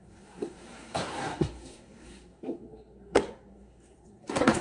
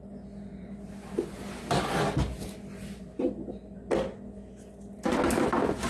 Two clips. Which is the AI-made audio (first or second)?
first